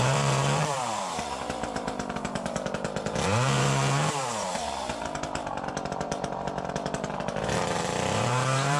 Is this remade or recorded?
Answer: remade